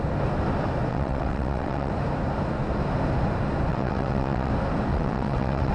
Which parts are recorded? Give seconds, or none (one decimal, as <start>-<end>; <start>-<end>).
0.0-0.9; 1.9-3.7; 4.5-4.9